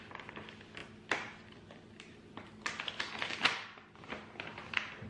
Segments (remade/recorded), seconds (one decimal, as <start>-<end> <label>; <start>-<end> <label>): 0.0-5.1 recorded